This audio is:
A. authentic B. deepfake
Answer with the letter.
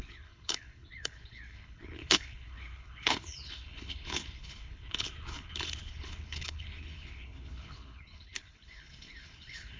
B